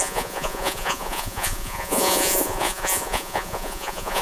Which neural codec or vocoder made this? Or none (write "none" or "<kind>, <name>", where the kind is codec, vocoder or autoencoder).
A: vocoder, Vocos